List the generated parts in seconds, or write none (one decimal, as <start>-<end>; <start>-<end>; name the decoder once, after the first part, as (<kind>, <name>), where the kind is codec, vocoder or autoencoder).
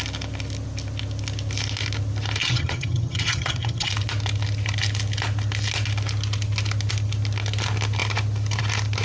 2.4-3.9 (vocoder, HiFi-GAN)